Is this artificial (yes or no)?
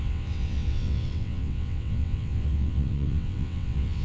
yes